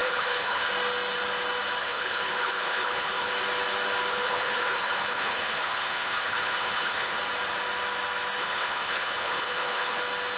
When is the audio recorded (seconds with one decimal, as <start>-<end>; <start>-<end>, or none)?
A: 0.7-1.8; 3.3-4.1; 7.2-8.4; 10.0-10.4